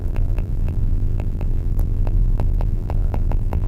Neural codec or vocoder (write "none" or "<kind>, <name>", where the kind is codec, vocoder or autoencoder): vocoder, BigVGAN v2